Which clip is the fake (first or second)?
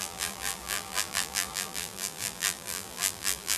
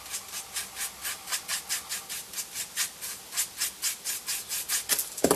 first